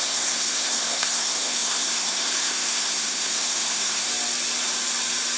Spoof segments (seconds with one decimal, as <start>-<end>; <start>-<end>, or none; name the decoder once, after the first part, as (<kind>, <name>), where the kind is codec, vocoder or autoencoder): 0.0-4.1 (codec, SNAC)